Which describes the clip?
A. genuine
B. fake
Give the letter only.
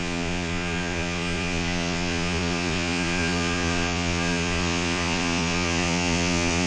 B